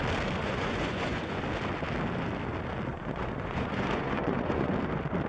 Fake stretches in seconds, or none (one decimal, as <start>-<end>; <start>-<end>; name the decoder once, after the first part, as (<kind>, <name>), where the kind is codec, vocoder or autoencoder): 0.4-1.4 (vocoder, Vocos); 2.9-4.7